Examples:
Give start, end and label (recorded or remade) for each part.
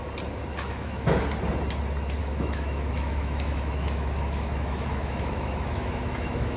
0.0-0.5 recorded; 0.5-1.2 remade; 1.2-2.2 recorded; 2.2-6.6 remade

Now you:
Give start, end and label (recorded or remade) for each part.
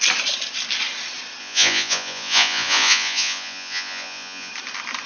0.0-1.4 recorded; 1.4-4.5 remade; 4.5-5.1 recorded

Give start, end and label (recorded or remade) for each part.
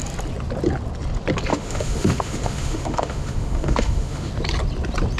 0.0-1.5 recorded; 1.5-4.3 remade; 4.3-5.2 recorded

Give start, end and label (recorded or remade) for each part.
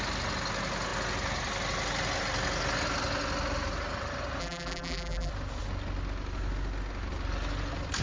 0.0-4.4 recorded; 4.4-5.3 remade; 5.3-8.0 recorded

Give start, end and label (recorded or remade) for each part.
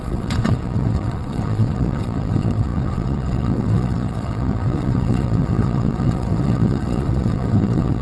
0.0-8.0 remade